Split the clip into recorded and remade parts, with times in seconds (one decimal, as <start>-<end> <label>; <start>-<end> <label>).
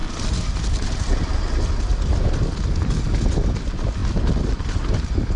0.0-5.4 recorded